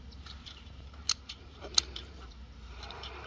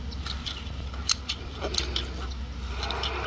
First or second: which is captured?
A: second